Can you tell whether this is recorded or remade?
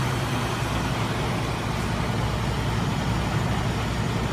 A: recorded